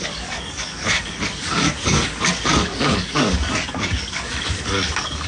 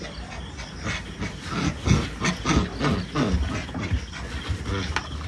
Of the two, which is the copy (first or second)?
first